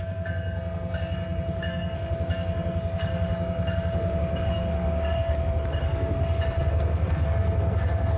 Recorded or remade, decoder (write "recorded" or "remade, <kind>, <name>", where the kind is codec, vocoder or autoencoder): remade, codec, SNAC